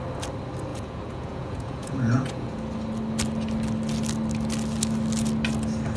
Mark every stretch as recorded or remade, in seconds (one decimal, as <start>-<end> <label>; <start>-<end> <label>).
0.0-0.7 recorded; 0.7-2.6 remade; 2.6-6.0 recorded

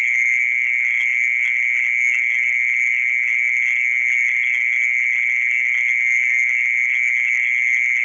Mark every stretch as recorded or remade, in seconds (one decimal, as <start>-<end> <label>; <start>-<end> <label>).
0.0-8.0 recorded